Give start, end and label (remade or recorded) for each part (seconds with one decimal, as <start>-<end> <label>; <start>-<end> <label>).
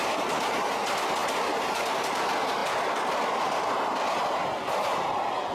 0.0-0.5 remade; 0.5-5.5 recorded